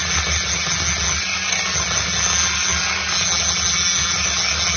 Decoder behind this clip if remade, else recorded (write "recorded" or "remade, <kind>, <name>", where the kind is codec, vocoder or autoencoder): recorded